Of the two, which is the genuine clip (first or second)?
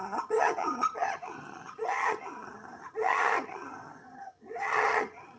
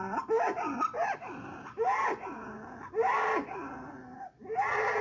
second